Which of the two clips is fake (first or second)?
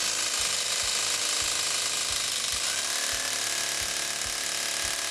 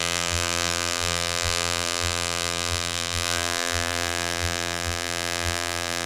second